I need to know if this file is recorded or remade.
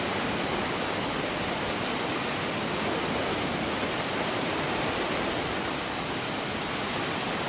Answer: recorded